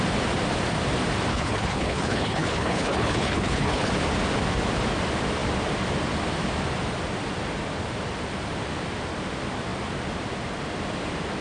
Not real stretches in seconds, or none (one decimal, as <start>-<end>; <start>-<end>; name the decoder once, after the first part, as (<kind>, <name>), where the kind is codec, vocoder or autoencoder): 1.3-3.9 (codec, HILCodec)

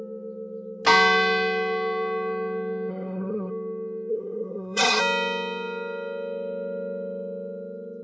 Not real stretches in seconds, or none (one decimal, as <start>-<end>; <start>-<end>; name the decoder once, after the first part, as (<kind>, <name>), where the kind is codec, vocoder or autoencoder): 2.9-3.5 (codec, SNAC); 4.1-5.0

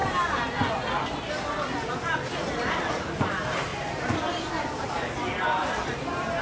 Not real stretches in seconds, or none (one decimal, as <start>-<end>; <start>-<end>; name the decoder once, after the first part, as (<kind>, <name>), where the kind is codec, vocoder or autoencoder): none